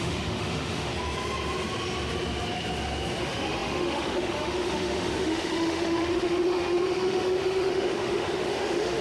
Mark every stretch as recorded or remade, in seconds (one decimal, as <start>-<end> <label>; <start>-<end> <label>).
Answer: 0.0-0.9 remade; 0.9-3.2 recorded; 3.2-9.0 remade